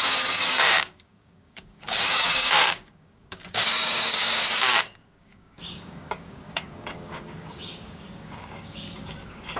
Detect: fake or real fake